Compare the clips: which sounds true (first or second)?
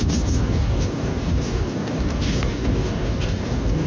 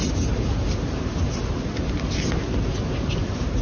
second